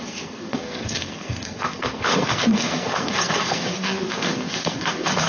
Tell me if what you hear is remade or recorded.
remade